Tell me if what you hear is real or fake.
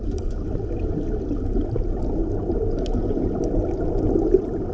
real